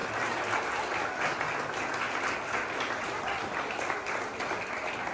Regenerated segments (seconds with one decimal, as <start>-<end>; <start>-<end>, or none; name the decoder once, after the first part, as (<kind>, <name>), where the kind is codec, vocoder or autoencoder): none